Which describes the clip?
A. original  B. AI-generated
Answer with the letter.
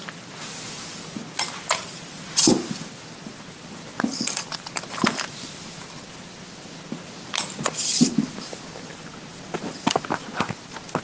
A